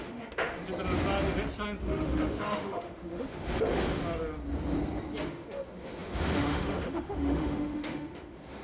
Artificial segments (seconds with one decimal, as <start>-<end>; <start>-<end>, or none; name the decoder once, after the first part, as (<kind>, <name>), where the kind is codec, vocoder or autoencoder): 0.0-0.6 (autoencoder, DAC-VAE); 1.8-4.0; 5.3-8.6